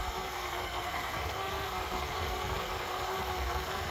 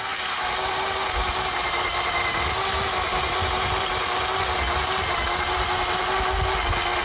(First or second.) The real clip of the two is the second